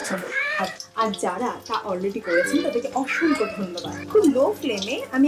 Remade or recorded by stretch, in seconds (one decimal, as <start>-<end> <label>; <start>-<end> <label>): 0.0-0.6 remade; 0.6-5.3 recorded